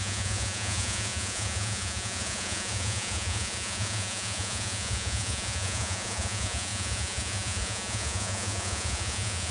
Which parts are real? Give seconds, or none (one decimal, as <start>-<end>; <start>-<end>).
none